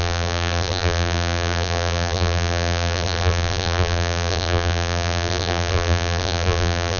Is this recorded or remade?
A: remade